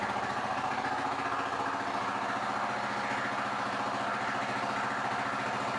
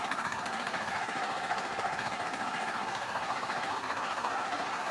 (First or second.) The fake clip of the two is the second